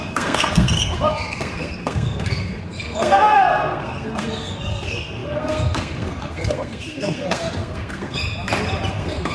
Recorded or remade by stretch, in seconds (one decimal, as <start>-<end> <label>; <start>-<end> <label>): 0.0-8.2 remade; 8.2-8.9 recorded; 8.9-9.3 remade